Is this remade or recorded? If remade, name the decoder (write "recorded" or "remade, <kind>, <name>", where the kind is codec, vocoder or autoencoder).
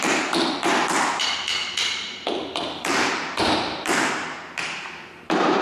remade, vocoder, BigVGAN v2